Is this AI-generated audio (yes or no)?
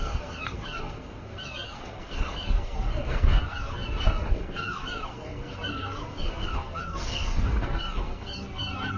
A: yes